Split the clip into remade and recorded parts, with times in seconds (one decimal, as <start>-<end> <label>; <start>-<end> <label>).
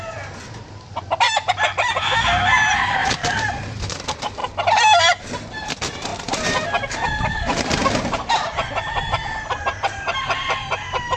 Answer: 0.0-3.0 recorded; 3.0-4.0 remade; 4.0-11.2 recorded